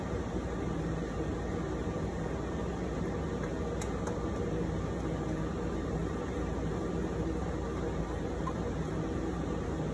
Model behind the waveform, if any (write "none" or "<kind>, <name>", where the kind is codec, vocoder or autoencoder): vocoder, BigVGAN v2